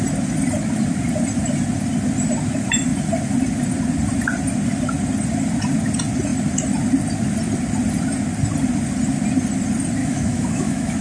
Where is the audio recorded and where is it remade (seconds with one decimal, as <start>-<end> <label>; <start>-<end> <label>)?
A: 0.0-10.0 recorded; 10.0-11.0 remade